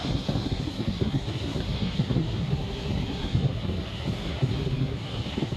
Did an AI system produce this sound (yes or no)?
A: yes